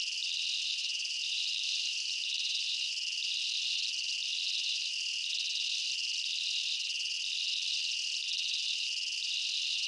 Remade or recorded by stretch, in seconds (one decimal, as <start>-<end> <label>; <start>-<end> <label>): 0.0-0.8 recorded; 0.8-2.9 remade; 2.9-9.9 recorded